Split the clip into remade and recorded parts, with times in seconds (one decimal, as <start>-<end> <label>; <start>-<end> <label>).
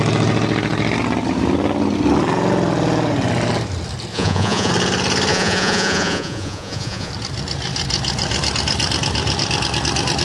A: 0.0-4.1 recorded; 4.1-4.7 remade; 4.7-5.3 recorded; 5.3-7.1 remade; 7.1-10.2 recorded